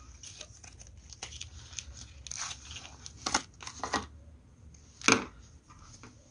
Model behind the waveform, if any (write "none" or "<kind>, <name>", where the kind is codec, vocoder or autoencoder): none